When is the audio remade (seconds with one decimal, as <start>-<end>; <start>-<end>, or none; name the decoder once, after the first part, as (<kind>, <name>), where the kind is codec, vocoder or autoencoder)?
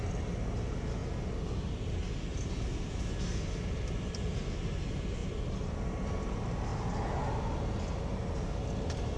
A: 2.3-4.4 (vocoder, BigVGAN v2); 5.2-5.9